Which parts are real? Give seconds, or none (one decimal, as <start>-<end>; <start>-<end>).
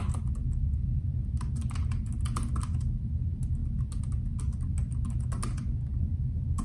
0.0-6.6